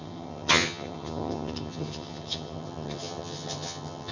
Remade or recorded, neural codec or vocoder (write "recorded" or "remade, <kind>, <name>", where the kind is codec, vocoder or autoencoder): remade, vocoder, HiFi-GAN